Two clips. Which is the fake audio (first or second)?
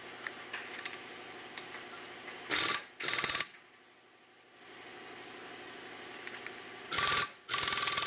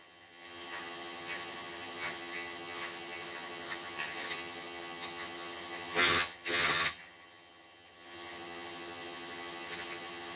second